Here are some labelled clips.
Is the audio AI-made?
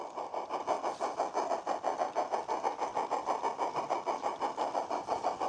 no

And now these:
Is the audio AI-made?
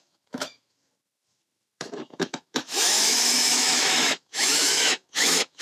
yes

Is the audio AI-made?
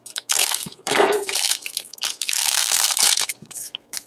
yes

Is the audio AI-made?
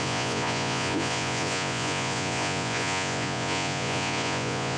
yes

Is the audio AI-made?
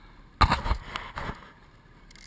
no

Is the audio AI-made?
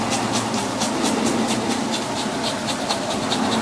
no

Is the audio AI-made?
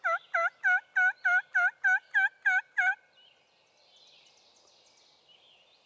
no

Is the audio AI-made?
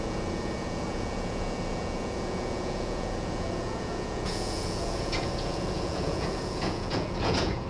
yes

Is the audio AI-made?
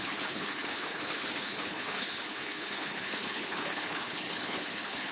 yes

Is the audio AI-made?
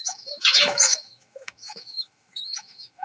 yes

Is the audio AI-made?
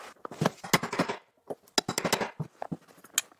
no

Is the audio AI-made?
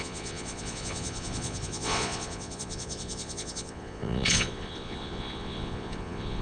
yes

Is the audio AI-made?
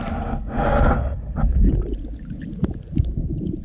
no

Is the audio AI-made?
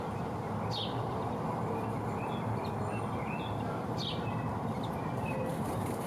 yes